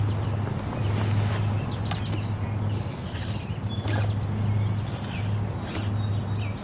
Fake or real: real